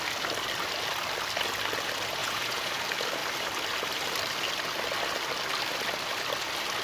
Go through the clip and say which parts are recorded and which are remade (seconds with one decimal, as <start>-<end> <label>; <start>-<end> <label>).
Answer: 0.0-2.2 recorded; 2.2-2.8 remade; 2.8-6.8 recorded